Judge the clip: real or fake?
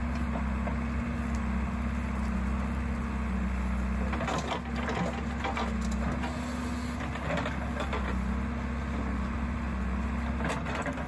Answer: real